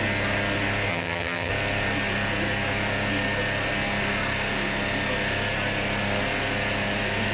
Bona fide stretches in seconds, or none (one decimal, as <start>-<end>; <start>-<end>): 0.0-0.9; 1.5-7.3